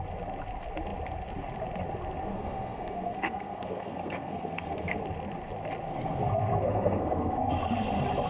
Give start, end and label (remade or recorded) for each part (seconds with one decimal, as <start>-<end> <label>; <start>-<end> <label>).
0.0-2.3 recorded; 2.3-5.0 remade; 5.0-5.9 recorded; 5.9-7.5 remade; 7.5-8.3 recorded